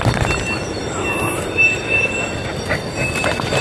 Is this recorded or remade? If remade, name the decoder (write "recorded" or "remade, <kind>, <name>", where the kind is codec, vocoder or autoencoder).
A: recorded